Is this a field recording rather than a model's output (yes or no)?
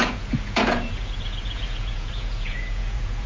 no